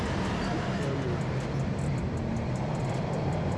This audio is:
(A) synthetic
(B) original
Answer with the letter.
B